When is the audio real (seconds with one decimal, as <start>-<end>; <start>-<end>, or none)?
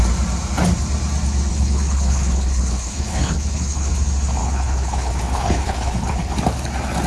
0.0-1.5; 3.9-4.4; 6.3-7.1